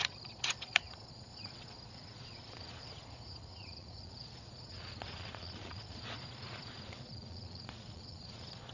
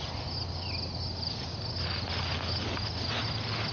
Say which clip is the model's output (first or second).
first